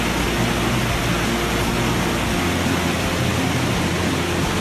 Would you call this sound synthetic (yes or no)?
no